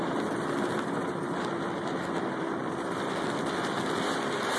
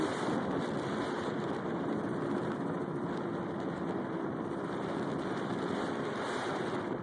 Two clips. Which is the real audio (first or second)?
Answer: first